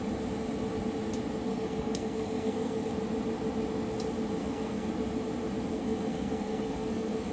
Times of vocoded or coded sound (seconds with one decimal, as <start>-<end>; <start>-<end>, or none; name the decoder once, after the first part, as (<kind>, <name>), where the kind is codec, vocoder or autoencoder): 1.5-2.9 (codec, SNAC); 4.4-4.9; 5.7-7.3